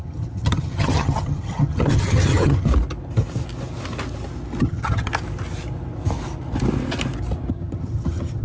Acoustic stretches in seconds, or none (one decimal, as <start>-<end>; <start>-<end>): 2.7-4.6; 5.1-7.5